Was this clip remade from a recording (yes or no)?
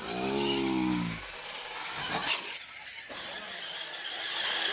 no